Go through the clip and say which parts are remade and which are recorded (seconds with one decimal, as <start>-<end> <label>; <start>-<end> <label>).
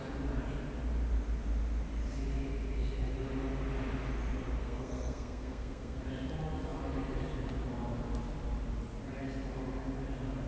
0.0-4.6 recorded; 4.6-6.0 remade; 6.0-10.5 recorded